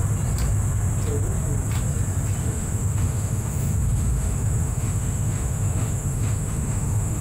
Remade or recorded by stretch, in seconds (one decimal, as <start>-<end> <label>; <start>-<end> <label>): 0.0-2.4 recorded; 2.4-7.2 remade